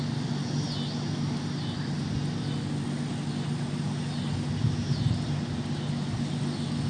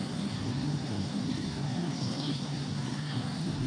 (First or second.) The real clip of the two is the first